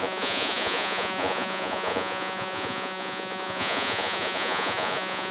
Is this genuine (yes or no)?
no